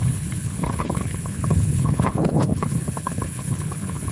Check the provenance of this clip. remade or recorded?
remade